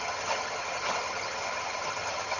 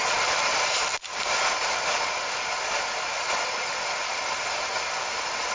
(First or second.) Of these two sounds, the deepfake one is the first